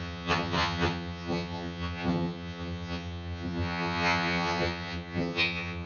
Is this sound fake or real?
fake